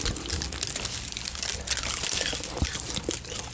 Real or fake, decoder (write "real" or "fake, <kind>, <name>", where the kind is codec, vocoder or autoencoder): real